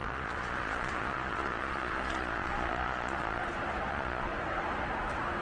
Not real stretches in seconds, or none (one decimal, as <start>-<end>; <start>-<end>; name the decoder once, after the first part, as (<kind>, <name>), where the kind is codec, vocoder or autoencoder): 0.0-3.4 (vocoder, Vocos); 3.9-4.3